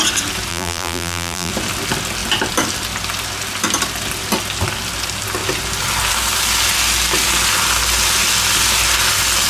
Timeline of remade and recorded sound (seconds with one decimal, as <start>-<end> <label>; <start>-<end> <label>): 0.0-0.5 recorded; 0.5-1.5 remade; 1.5-9.5 recorded